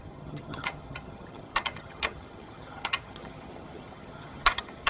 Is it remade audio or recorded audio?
remade